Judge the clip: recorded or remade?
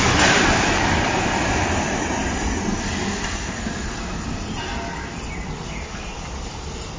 recorded